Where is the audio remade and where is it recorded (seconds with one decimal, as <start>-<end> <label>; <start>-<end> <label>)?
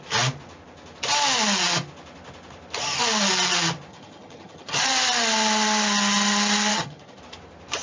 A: 0.0-3.9 recorded; 3.9-4.9 remade; 4.9-6.7 recorded; 6.7-7.2 remade; 7.2-7.8 recorded